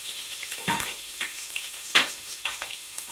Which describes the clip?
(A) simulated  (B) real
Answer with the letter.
A